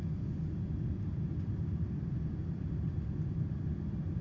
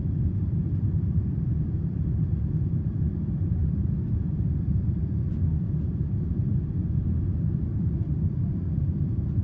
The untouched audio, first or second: first